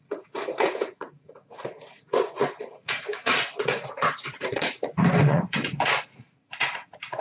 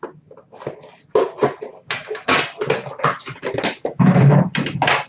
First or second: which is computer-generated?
first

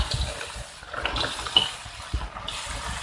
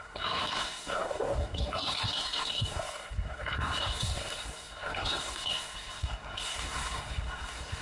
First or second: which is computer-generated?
second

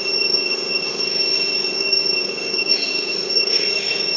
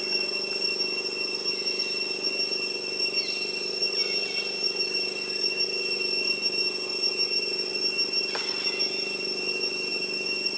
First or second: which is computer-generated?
first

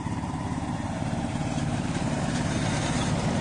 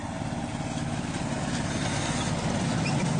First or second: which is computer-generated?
first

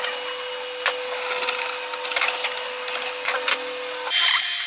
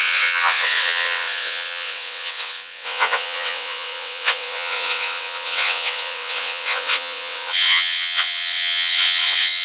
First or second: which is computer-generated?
second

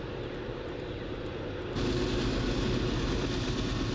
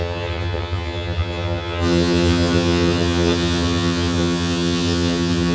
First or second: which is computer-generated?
second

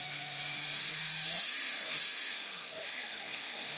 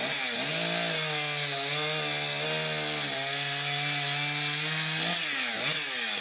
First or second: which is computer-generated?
first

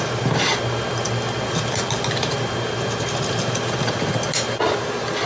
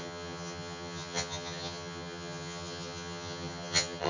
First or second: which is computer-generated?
second